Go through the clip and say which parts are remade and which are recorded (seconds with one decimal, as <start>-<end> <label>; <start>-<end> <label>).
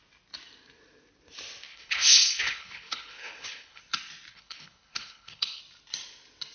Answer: 0.0-1.7 recorded; 1.7-3.8 remade; 3.8-4.3 recorded; 4.3-5.6 remade; 5.6-6.5 recorded